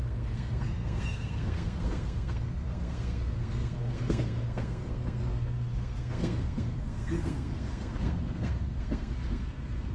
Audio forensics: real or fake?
fake